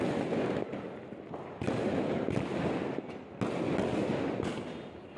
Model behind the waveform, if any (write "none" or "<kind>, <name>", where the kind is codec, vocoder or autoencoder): none